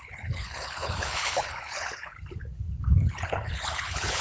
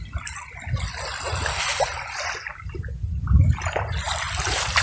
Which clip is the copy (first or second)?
first